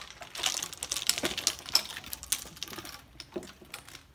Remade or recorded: recorded